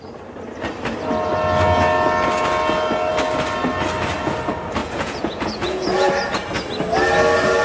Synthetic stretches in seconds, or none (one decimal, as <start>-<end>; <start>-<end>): 4.8-6.1